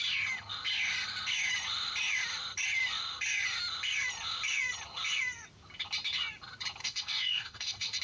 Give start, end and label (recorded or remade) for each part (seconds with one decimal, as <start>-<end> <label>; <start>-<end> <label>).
0.0-6.8 recorded; 6.8-8.0 remade